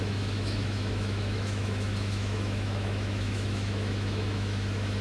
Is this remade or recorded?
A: remade